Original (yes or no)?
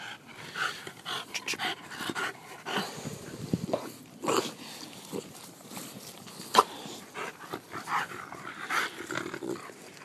yes